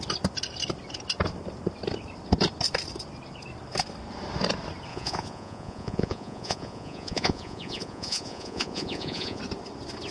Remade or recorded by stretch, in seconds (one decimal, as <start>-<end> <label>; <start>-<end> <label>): 0.0-4.9 recorded; 4.9-9.4 remade; 9.4-10.1 recorded